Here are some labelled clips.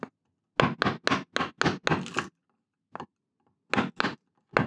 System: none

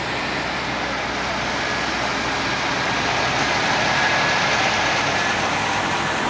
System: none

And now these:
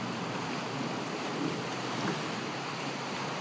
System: none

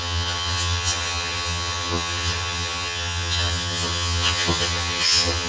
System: vocoder, HiFi-GAN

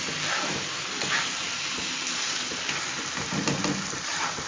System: vocoder, BigVGAN v2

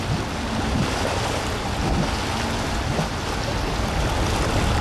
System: none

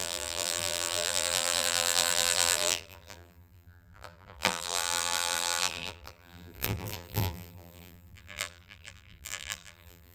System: vocoder, BigVGAN v2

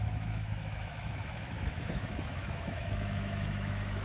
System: autoencoder, DAC-VAE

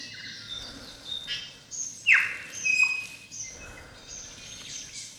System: none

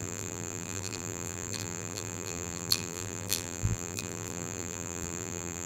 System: vocoder, BigVGAN v2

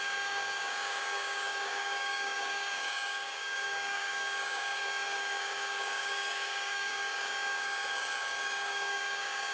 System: codec, DAC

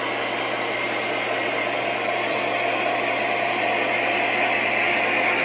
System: none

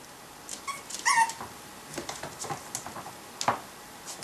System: none